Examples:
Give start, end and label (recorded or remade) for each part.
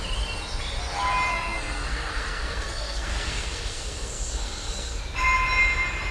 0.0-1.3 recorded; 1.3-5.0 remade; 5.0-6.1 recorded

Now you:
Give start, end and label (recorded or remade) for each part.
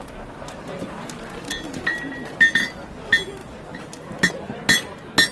0.0-5.3 recorded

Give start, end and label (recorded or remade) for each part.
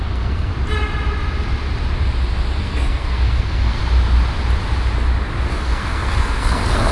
0.0-0.5 remade; 0.5-2.6 recorded; 2.6-3.8 remade; 3.8-5.5 recorded; 5.5-6.9 remade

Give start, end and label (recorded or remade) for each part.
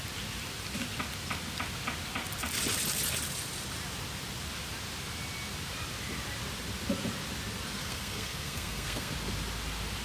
0.0-7.8 recorded; 7.8-9.1 remade; 9.1-10.0 recorded